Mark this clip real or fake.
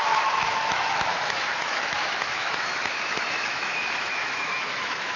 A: fake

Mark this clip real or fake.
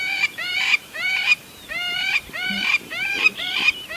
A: fake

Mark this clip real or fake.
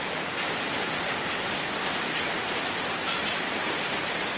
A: real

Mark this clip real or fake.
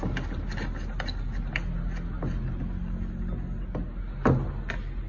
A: real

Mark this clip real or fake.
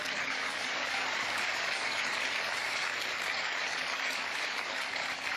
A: fake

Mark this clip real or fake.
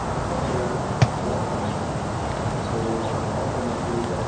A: real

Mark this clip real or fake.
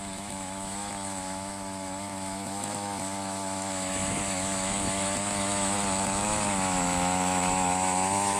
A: fake